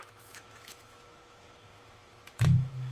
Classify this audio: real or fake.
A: fake